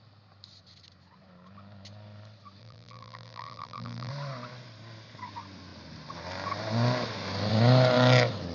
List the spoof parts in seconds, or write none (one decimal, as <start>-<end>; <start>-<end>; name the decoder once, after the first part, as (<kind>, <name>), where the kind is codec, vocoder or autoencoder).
2.6-4.1 (vocoder, BigVGAN v2)